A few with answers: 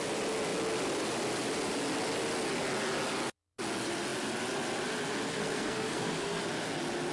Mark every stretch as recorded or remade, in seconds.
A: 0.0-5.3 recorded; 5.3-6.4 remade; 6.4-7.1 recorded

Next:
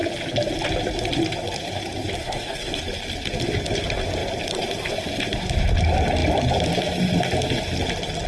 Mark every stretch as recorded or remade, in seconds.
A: 0.0-2.2 recorded; 2.2-2.8 remade; 2.8-8.3 recorded